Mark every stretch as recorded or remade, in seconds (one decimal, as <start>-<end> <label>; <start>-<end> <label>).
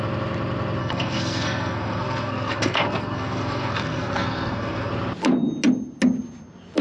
0.0-0.8 recorded; 0.8-4.9 remade; 4.9-6.8 recorded